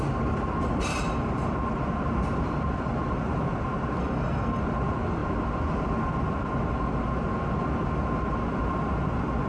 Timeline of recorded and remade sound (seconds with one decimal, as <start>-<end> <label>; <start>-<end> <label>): 0.0-4.0 recorded; 4.0-4.6 remade; 4.6-9.5 recorded